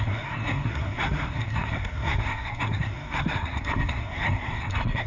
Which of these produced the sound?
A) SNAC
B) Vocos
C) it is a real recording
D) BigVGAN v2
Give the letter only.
A